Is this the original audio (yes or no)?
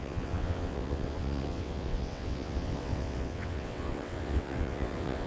no